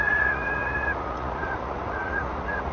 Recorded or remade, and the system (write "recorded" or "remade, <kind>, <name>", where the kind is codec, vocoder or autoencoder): remade, vocoder, Vocos